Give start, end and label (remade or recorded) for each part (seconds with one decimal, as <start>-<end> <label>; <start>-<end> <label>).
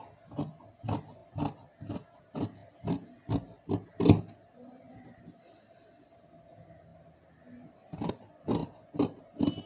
0.0-1.2 recorded; 1.2-2.2 remade; 2.2-2.6 recorded; 2.6-3.9 remade; 3.9-6.9 recorded; 6.9-8.1 remade; 8.1-8.6 recorded; 8.6-9.2 remade; 9.2-9.7 recorded